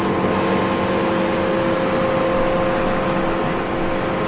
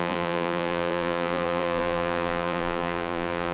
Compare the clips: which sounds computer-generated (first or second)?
second